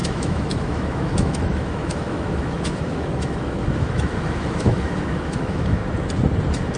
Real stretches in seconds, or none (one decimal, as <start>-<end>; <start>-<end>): 5.8-6.8